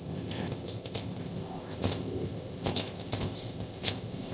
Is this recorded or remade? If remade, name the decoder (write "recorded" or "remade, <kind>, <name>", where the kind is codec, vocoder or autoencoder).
remade, codec, ZipCodec